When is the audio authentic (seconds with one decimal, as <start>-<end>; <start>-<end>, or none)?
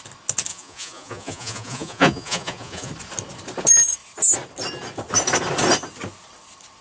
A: 0.0-0.5; 2.9-6.8